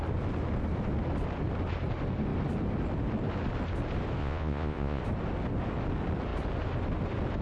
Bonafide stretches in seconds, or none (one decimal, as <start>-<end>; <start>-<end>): 0.0-4.2; 5.0-7.4